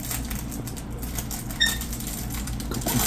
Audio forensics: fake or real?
real